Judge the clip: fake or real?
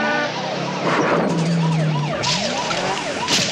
fake